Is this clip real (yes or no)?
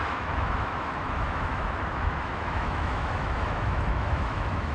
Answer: no